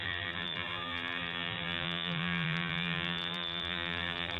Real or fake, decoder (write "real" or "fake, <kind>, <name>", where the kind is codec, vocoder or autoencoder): fake, vocoder, BigVGAN v2